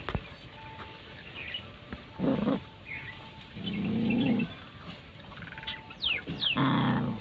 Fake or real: real